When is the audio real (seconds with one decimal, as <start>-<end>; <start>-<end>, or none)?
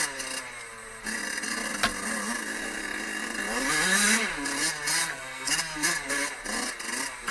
0.0-5.0; 5.5-7.3